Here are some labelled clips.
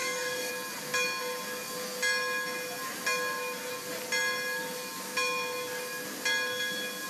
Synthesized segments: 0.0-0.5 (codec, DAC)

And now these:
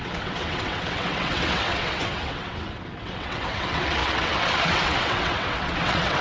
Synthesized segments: 0.0-6.2 (vocoder, WaveNeXt)

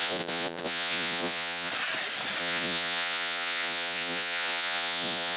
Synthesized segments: 0.0-1.7 (vocoder, Vocos); 2.4-5.4